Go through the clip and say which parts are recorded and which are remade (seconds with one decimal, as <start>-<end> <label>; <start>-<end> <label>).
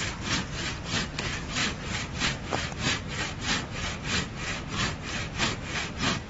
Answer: 0.0-6.3 recorded